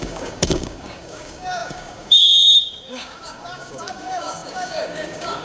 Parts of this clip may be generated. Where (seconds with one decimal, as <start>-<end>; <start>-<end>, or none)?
0.0-5.4